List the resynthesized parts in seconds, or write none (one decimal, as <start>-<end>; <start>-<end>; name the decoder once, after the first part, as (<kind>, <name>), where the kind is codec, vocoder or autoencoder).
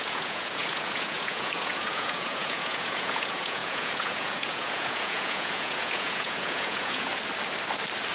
0.0-7.1 (vocoder, Vocos)